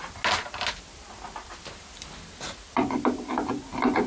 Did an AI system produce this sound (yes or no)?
no